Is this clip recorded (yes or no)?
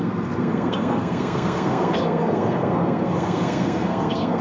no